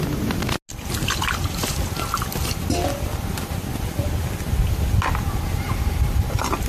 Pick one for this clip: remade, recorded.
recorded